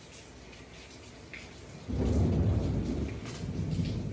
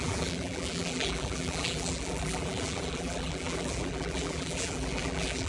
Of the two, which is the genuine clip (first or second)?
first